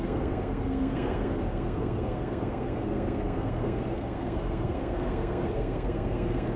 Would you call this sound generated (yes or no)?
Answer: yes